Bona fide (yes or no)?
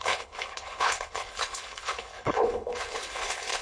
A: no